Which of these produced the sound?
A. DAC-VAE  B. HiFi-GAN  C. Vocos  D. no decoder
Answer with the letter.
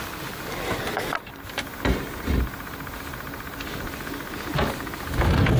D